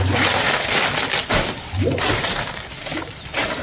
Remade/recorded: recorded